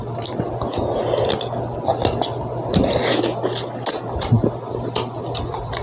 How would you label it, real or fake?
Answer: real